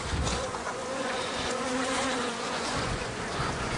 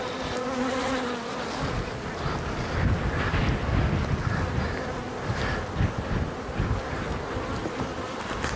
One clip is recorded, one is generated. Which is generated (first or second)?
first